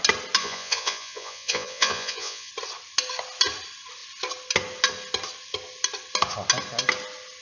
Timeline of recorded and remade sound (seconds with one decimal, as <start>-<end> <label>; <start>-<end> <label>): 0.0-0.4 recorded; 0.4-2.5 remade; 2.5-7.4 recorded